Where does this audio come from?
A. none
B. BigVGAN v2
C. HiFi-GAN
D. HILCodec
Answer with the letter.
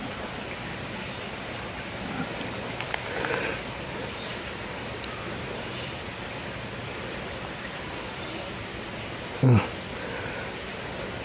A